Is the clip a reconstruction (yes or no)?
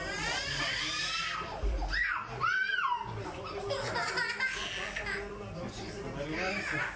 no